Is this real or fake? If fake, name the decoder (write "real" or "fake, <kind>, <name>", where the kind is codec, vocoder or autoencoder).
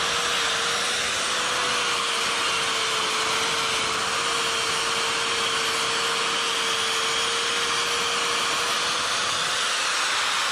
real